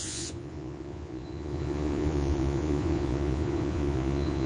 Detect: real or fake fake